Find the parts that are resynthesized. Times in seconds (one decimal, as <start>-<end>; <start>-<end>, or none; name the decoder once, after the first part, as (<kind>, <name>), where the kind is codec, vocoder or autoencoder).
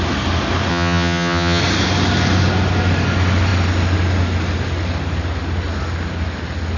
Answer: 0.7-1.6 (vocoder, HiFi-GAN)